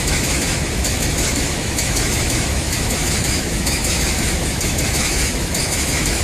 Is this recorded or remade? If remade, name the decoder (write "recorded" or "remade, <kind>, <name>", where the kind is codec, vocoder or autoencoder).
remade, autoencoder, DAC-VAE